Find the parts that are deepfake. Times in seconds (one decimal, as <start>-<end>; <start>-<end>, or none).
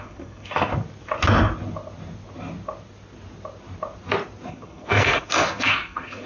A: 0.0-0.7; 4.5-6.3